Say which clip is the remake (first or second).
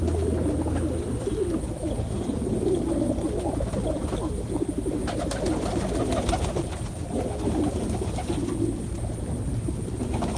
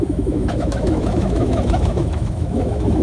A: second